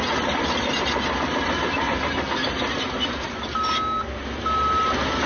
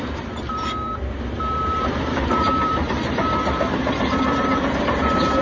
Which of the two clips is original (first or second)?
first